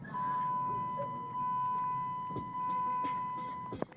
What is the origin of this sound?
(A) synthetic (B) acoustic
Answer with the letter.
B